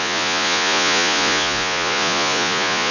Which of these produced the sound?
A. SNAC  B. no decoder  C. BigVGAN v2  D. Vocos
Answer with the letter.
D